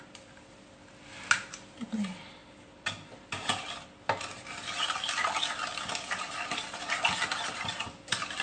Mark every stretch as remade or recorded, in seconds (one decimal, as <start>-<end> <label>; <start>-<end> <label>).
0.0-8.4 recorded